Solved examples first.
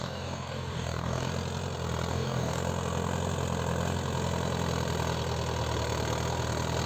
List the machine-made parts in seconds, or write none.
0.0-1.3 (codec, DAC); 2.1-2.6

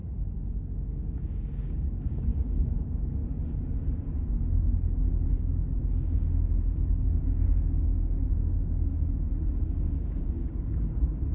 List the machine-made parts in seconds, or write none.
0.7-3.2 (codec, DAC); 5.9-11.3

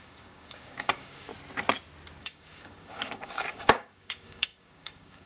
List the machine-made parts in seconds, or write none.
0.0-1.3 (codec, DAC); 2.2-5.3